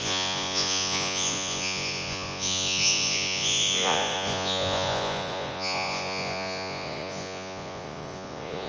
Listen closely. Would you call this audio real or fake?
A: fake